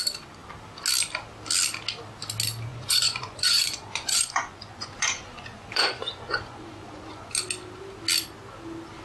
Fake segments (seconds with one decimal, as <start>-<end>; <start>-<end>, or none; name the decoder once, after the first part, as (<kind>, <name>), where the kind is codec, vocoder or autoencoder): 2.7-7.3 (vocoder, Vocos)